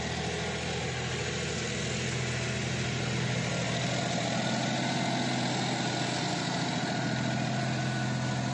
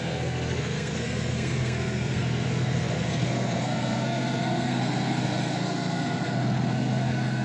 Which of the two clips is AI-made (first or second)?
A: second